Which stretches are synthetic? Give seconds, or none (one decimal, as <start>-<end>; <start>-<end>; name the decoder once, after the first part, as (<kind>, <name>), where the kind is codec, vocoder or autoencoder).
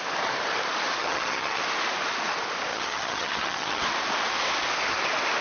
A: 1.0-1.6 (vocoder, HiFi-GAN); 2.7-3.8